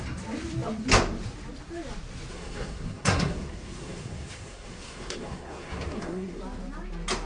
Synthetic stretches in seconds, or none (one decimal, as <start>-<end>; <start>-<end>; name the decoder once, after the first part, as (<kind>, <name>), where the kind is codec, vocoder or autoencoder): 2.3-6.4 (codec, SNAC)